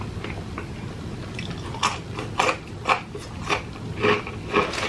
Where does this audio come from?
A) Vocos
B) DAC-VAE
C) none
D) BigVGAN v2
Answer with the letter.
C